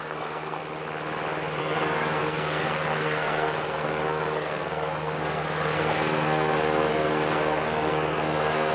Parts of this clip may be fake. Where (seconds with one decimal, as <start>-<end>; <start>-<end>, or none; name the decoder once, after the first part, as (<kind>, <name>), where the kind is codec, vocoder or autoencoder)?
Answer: 0.0-0.6 (codec, SNAC); 1.6-8.7